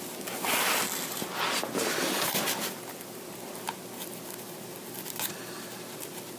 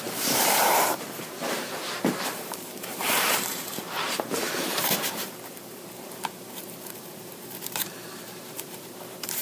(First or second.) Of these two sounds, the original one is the first